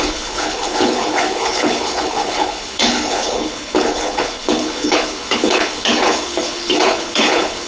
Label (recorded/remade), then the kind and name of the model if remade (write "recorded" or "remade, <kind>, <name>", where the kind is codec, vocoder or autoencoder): remade, codec, HILCodec